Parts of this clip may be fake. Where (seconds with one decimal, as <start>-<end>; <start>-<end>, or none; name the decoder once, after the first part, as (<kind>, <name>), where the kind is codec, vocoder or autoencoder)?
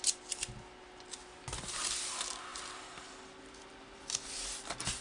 none